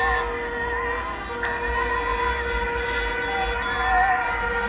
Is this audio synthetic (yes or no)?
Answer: no